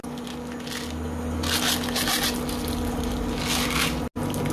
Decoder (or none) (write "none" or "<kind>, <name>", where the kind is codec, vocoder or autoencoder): none